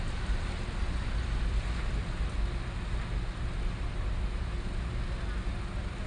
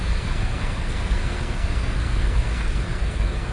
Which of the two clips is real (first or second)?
first